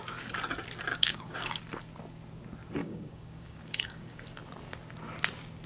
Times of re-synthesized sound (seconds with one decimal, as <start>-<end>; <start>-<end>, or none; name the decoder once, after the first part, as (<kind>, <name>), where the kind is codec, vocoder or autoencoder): 0.9-1.6 (codec, DAC); 2.8-4.2

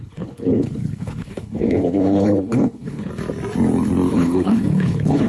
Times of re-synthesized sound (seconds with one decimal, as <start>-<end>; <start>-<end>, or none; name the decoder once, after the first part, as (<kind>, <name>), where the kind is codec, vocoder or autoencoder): 0.0-3.1 (codec, HILCodec); 4.1-5.3

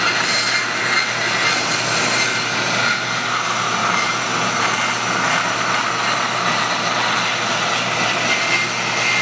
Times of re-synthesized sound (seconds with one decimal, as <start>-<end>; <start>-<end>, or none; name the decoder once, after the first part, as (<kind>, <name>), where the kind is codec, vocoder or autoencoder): none

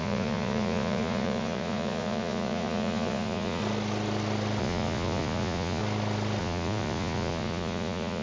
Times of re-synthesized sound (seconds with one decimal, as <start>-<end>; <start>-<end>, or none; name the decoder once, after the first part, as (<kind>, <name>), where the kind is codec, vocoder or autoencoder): 0.0-3.6 (vocoder, Vocos); 4.6-5.8; 6.4-8.2

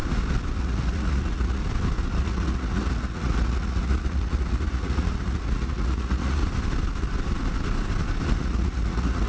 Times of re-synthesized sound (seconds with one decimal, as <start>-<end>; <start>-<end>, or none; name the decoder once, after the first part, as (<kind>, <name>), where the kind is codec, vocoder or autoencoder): 0.6-1.6 (vocoder, Vocos); 2.2-6.4; 8.4-9.3

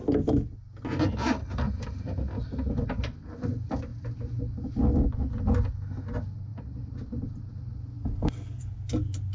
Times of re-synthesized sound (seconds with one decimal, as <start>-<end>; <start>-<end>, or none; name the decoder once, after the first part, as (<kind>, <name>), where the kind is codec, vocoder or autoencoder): 8.0-8.6 (codec, SNAC)